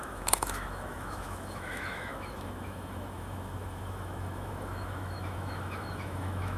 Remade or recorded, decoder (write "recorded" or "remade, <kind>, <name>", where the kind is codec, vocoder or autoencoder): remade, autoencoder, DAC-VAE